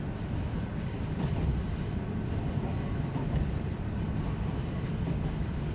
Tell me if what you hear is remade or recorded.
remade